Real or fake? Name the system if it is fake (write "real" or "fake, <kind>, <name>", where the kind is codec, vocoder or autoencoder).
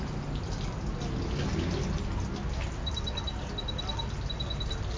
real